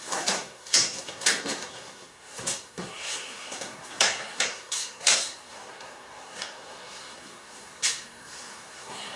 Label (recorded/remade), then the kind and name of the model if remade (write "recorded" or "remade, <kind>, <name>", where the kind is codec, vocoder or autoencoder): remade, codec, SNAC